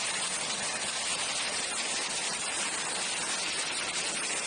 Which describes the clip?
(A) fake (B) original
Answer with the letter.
B